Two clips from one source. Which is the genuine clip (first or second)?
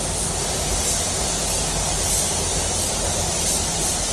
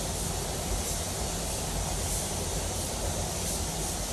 first